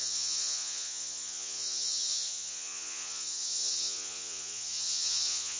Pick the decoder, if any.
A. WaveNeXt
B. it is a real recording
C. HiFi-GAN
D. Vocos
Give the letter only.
D